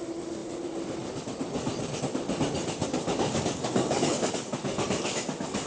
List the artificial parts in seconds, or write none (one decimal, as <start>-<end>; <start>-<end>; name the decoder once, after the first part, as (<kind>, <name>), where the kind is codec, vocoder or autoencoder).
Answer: 2.8-5.2 (codec, DAC)